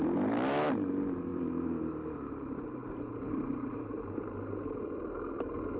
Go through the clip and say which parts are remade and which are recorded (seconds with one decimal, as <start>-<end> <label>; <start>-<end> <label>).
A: 0.0-1.3 recorded; 1.3-4.8 remade; 4.8-5.8 recorded